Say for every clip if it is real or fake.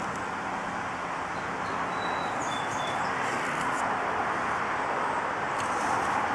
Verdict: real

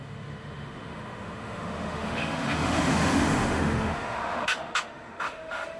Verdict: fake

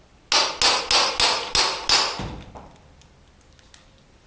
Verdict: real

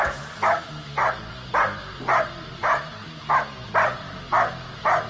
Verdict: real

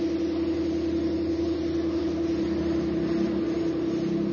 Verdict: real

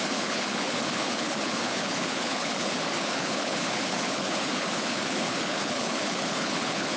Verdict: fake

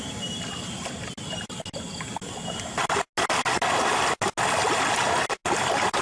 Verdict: real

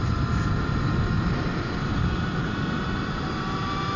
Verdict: real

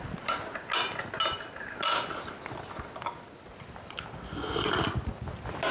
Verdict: real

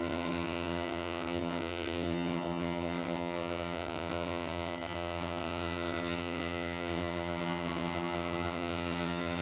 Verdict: fake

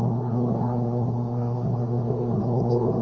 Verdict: fake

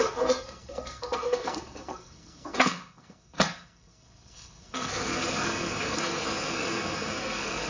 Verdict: fake